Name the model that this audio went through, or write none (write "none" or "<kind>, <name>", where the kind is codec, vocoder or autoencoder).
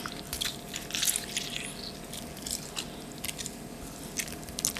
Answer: none